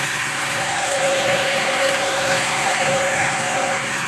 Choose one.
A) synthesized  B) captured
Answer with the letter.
A